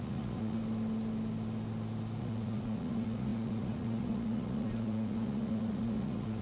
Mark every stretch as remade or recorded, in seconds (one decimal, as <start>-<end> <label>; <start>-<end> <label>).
0.0-0.6 remade; 0.6-2.2 recorded; 2.2-6.4 remade